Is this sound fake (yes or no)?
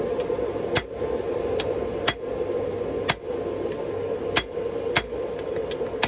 no